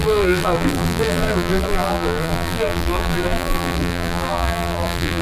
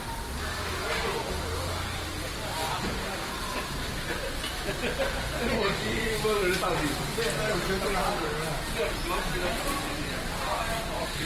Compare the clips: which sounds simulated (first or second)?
first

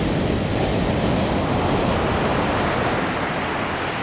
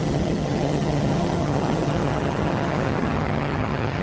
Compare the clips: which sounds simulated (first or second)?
second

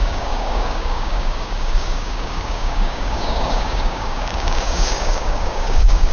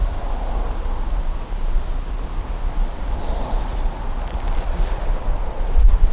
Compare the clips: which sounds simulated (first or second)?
first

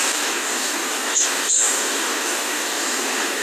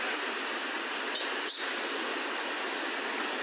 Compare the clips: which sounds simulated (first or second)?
first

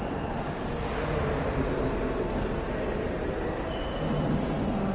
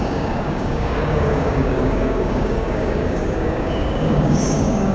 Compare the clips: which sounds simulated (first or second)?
second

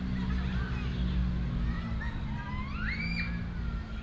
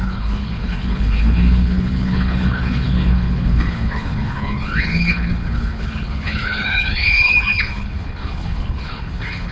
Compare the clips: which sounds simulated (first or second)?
second